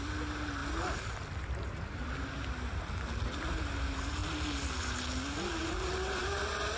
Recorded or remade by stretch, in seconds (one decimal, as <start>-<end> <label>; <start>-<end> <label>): 0.0-0.6 recorded; 0.6-2.1 remade; 2.1-6.8 recorded